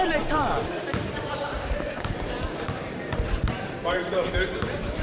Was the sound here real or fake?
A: fake